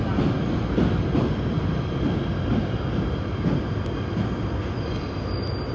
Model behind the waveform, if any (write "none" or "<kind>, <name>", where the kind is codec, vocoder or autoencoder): none